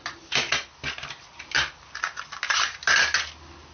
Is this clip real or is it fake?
real